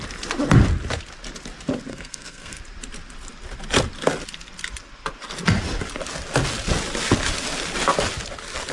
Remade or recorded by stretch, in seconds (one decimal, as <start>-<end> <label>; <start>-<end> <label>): 0.0-1.9 recorded; 1.9-2.6 remade; 2.6-8.7 recorded